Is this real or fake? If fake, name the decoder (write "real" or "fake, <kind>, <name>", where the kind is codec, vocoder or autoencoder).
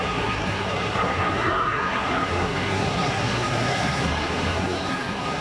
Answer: fake, codec, SNAC